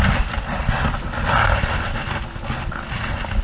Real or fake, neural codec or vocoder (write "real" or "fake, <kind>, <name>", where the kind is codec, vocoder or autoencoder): real